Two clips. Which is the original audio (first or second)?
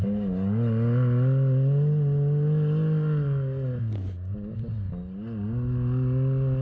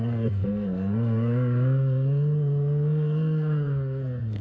first